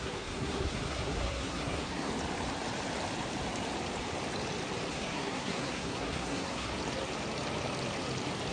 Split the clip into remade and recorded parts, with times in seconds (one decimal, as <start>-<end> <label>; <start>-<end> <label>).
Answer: 0.0-2.1 remade; 2.1-4.9 recorded; 4.9-6.7 remade; 6.7-8.5 recorded